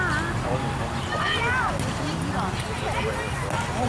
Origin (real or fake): real